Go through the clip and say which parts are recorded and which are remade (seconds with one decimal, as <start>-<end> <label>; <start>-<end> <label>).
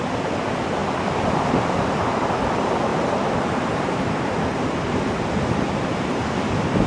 0.0-2.9 recorded; 2.9-5.7 remade; 5.7-6.9 recorded